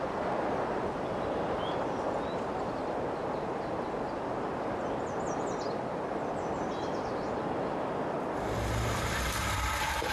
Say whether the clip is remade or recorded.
recorded